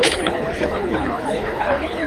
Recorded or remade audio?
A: remade